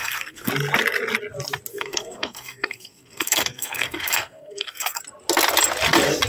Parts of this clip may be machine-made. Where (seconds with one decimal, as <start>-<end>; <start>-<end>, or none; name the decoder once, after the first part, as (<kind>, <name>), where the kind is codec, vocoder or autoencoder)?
0.0-0.5 (codec, SNAC); 1.7-5.0